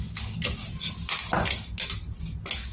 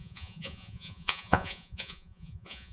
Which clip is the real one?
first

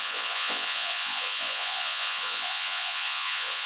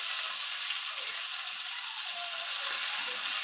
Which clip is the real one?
second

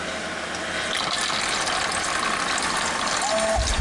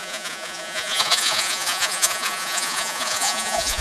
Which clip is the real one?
first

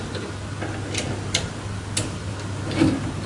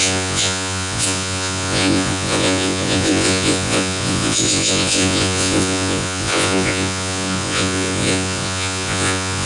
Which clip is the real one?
first